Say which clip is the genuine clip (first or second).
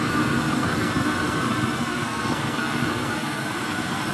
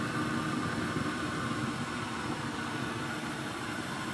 second